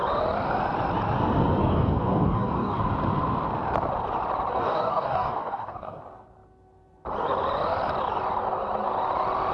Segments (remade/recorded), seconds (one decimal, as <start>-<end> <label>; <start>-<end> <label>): 0.0-1.6 recorded; 1.6-2.8 remade; 2.8-4.5 recorded; 4.5-6.0 remade; 6.0-9.5 recorded